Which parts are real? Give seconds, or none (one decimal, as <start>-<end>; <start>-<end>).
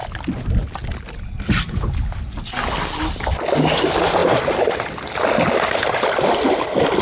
0.0-7.0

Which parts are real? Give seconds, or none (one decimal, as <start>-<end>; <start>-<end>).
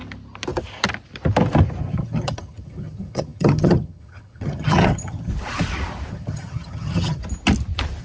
0.0-1.8; 5.3-6.1; 7.2-8.0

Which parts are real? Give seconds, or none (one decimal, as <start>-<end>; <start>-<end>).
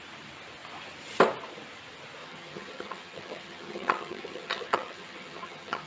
0.0-2.2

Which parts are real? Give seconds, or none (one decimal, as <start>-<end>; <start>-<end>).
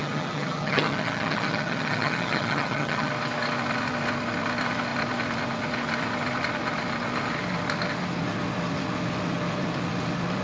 3.1-10.4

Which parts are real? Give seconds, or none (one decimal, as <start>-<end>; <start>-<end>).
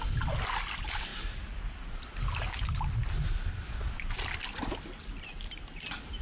0.0-6.2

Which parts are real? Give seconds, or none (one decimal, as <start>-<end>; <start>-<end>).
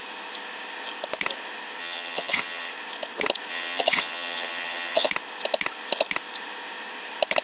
0.0-1.8; 2.7-3.5; 5.1-7.4